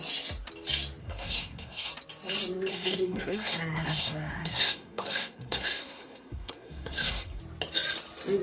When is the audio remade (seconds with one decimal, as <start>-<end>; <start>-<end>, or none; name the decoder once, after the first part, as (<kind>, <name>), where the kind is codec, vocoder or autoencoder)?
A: 1.0-1.9 (codec, SNAC); 2.7-7.4